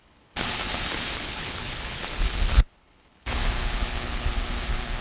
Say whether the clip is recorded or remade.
remade